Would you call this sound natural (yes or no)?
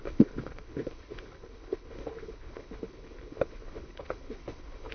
no